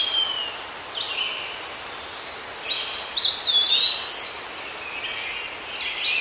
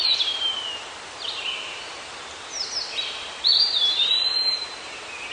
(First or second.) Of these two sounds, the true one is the first